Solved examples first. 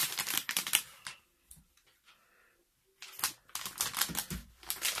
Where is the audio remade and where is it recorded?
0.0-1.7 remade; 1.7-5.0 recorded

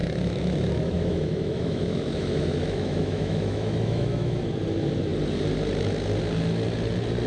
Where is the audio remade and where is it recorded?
0.0-4.4 remade; 4.4-7.3 recorded

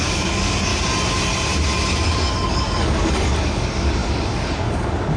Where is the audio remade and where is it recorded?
0.0-0.7 remade; 0.7-2.3 recorded; 2.3-5.2 remade

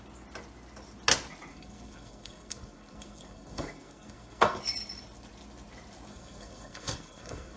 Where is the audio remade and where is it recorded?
0.0-1.5 recorded; 1.5-4.6 remade; 4.6-6.1 recorded; 6.1-7.6 remade

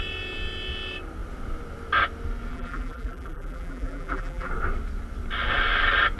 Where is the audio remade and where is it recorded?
0.0-2.5 recorded; 2.5-4.5 remade; 4.5-6.2 recorded

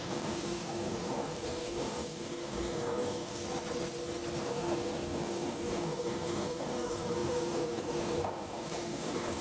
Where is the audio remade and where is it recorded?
0.0-3.4 remade; 3.4-4.4 recorded; 4.4-9.4 remade